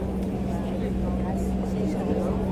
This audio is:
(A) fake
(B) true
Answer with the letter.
B